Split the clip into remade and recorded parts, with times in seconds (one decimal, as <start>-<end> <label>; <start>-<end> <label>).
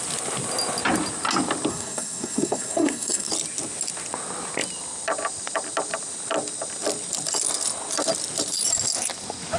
0.0-1.7 recorded; 1.7-3.3 remade; 3.3-9.6 recorded